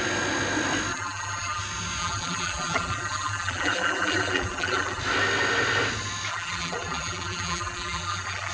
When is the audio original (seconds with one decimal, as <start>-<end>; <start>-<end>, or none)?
0.0-0.9; 1.6-2.0; 5.0-6.3